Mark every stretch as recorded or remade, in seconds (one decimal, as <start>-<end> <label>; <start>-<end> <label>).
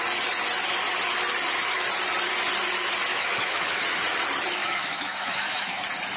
0.0-3.1 recorded; 3.1-3.8 remade; 3.8-4.6 recorded; 4.6-5.8 remade; 5.8-6.2 recorded